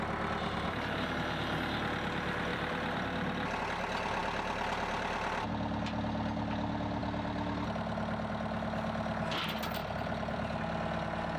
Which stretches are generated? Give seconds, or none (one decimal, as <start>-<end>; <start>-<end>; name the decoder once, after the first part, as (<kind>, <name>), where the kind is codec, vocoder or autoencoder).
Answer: 2.5-3.6 (vocoder, BigVGAN v2); 4.2-5.5; 9.8-10.6